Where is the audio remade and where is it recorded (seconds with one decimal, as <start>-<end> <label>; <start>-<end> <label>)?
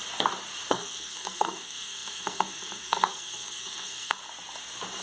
0.0-0.7 recorded; 0.7-4.2 remade; 4.2-5.0 recorded